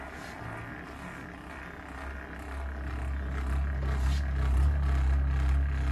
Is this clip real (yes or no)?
yes